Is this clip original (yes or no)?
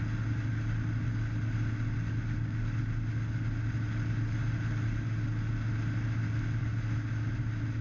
yes